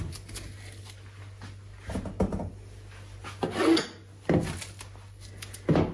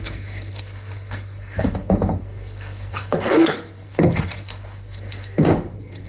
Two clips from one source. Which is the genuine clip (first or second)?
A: first